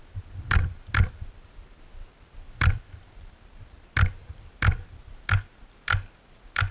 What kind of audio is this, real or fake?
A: real